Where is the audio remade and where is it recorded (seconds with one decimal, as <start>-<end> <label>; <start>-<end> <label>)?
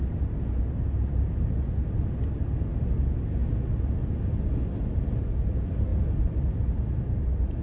0.0-5.9 recorded; 5.9-7.0 remade; 7.0-7.6 recorded